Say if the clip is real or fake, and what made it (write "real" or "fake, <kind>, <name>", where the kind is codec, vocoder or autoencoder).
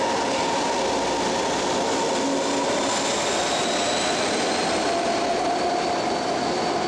real